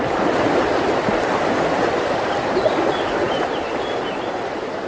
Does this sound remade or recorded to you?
recorded